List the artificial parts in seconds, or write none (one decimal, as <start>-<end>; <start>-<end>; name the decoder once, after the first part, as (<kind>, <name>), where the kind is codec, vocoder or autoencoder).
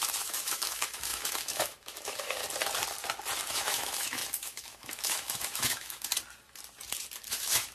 0.0-2.4 (autoencoder, DAC-VAE); 3.5-6.1; 7.3-7.7